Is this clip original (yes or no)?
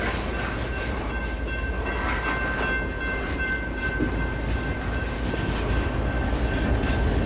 yes